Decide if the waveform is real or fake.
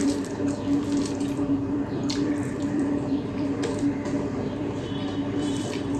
fake